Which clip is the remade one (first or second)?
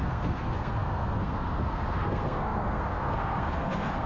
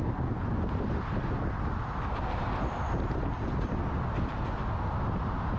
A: first